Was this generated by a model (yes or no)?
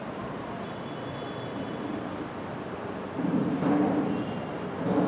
no